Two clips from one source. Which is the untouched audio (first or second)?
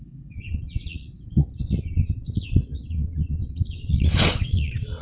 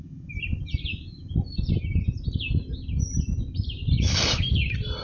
second